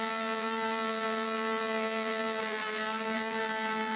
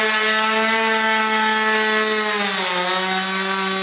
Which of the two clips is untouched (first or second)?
second